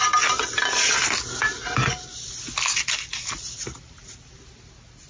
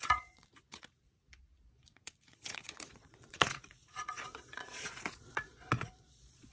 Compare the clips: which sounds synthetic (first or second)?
second